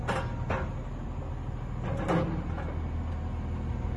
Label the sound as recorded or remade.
recorded